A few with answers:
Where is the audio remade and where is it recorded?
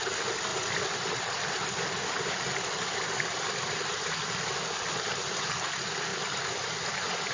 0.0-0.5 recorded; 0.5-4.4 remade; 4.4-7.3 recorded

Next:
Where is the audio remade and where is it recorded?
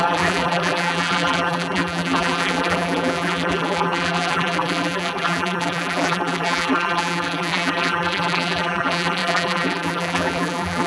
0.0-10.9 remade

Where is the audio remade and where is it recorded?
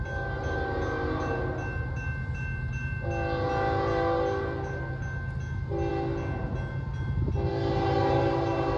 0.0-8.8 recorded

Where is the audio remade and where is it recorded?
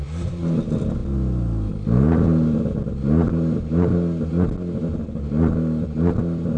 0.0-6.6 recorded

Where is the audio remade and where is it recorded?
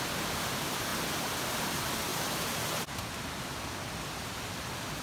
0.0-2.1 remade; 2.1-4.0 recorded; 4.0-5.0 remade